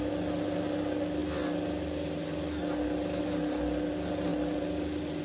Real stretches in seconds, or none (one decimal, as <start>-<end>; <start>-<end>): 0.0-5.2